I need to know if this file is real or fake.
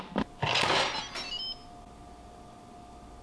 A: real